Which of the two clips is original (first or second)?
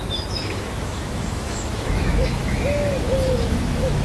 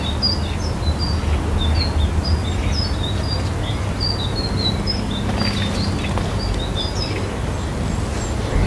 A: second